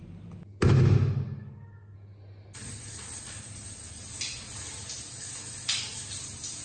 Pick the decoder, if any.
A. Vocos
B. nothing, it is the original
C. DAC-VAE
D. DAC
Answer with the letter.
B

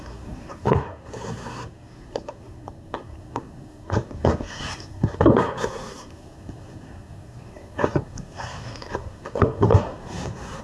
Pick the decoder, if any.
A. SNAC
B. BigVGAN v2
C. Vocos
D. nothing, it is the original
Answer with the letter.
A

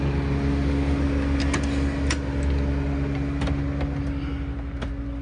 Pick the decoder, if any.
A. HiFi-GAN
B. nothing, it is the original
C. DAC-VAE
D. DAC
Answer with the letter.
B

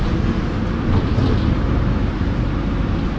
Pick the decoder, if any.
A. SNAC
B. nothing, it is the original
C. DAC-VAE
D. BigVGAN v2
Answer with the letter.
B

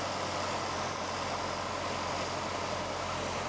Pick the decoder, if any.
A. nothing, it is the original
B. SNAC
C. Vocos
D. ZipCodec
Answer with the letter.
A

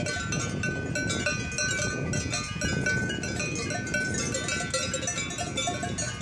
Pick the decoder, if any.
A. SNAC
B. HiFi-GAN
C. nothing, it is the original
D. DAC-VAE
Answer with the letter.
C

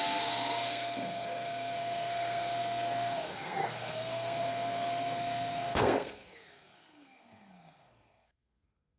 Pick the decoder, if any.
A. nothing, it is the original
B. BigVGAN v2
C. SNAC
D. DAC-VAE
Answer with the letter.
C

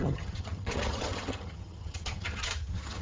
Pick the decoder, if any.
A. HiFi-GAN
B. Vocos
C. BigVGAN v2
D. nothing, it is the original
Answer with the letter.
A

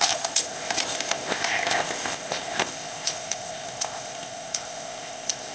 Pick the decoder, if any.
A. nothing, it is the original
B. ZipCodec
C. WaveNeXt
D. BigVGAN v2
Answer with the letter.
B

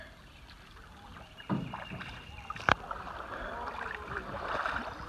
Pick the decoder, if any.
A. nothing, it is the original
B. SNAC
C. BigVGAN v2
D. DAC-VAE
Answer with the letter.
C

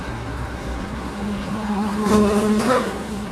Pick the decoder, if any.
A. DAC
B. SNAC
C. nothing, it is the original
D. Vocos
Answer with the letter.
B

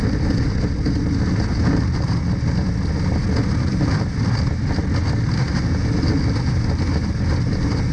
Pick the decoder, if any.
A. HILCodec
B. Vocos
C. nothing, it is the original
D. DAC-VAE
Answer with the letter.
C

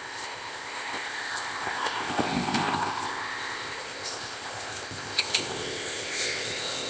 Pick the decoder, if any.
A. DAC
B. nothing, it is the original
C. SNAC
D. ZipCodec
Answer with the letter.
D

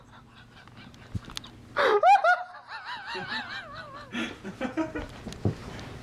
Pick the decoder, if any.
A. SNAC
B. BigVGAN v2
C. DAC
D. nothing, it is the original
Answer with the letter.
D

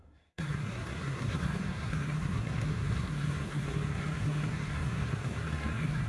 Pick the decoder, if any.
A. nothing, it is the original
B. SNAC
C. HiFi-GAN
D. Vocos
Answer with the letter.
B